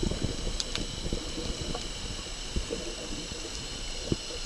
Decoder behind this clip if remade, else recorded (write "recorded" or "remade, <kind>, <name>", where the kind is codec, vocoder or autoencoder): remade, vocoder, BigVGAN v2